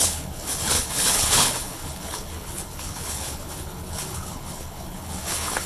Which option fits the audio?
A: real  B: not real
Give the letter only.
B